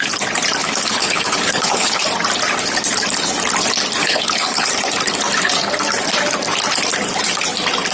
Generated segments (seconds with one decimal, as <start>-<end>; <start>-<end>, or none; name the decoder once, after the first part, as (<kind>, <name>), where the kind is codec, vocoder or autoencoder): 0.6-2.0 (codec, HILCodec); 4.0-4.7